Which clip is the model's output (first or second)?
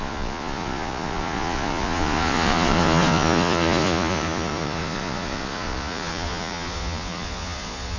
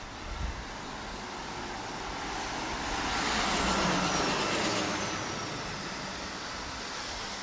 first